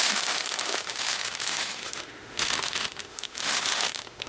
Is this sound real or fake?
fake